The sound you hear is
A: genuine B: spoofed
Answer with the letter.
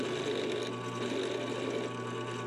A